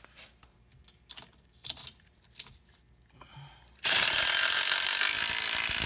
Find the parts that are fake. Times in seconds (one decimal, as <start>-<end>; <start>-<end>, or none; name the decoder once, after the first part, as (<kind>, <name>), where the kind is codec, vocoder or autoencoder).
none